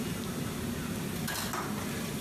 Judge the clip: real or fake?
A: real